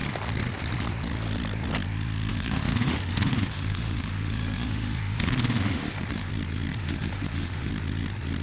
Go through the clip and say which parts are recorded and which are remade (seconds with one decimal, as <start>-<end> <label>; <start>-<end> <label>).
0.0-2.3 recorded; 2.3-6.3 remade; 6.3-6.7 recorded; 6.7-7.7 remade; 7.7-8.4 recorded